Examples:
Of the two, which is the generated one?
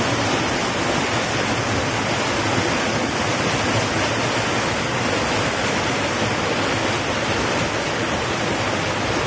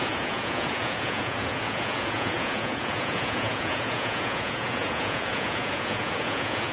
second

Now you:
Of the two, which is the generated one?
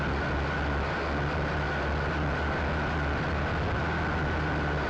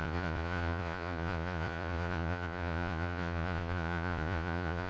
second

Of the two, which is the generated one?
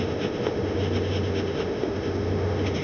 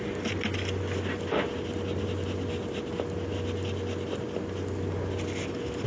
first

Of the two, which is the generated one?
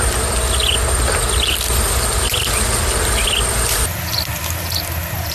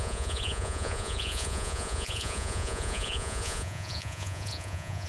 second